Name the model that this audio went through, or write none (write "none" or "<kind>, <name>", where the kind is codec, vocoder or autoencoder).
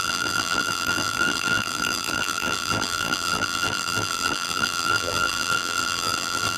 vocoder, BigVGAN v2